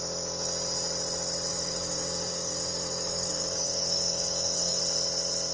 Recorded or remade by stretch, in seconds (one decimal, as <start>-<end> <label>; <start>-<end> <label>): 0.0-1.5 recorded; 1.5-4.8 remade; 4.8-5.5 recorded